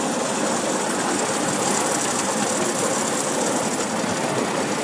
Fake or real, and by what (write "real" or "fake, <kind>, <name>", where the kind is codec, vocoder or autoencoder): real